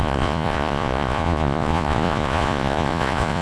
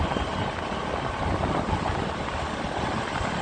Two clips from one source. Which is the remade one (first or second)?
first